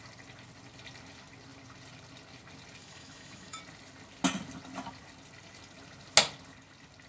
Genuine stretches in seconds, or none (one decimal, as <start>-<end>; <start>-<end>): 0.0-2.8; 3.6-7.1